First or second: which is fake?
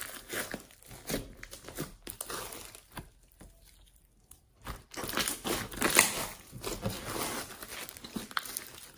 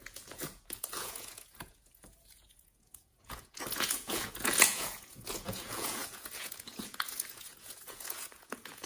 second